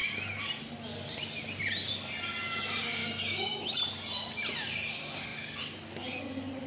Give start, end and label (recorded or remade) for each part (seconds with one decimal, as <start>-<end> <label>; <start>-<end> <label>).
0.0-3.0 recorded; 3.0-3.7 remade; 3.7-6.7 recorded